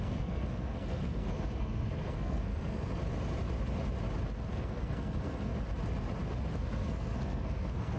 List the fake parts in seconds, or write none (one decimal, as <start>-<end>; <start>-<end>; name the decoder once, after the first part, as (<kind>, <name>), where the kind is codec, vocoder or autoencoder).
0.0-3.0 (codec, SNAC); 4.5-5.5; 6.5-8.0